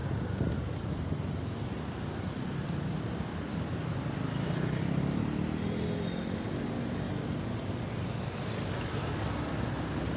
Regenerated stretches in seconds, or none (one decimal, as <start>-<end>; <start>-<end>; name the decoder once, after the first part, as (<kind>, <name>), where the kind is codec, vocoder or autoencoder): 0.0-2.8 (vocoder, BigVGAN v2)